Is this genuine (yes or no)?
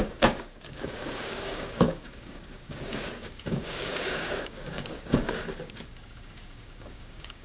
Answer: no